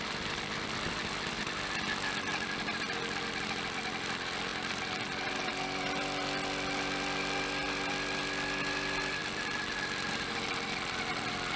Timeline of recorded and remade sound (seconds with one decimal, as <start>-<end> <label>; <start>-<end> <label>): 0.0-11.6 recorded